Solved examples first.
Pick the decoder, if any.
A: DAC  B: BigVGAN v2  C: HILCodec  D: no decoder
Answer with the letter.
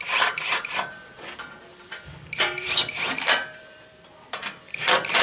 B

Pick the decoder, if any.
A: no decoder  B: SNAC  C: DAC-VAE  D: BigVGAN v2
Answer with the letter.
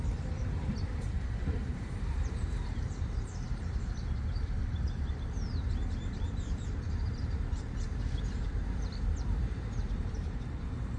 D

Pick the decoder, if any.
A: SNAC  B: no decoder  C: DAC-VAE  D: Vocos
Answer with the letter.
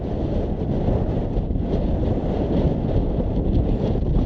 B